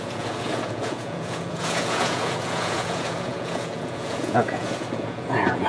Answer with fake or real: fake